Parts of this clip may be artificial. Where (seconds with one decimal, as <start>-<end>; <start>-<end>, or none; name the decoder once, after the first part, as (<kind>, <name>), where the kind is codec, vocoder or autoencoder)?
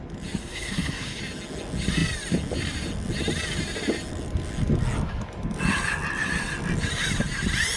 0.4-1.2 (codec, SNAC)